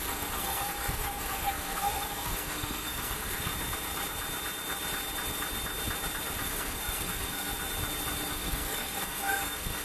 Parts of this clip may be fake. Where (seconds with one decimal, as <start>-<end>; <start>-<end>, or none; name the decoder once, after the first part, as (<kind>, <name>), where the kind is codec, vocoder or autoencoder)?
0.0-3.5 (codec, SNAC); 6.4-7.5; 8.3-9.8